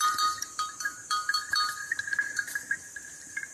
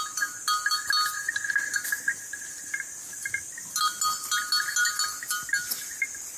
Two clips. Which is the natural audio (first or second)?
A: second